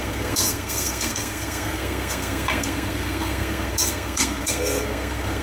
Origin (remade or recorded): remade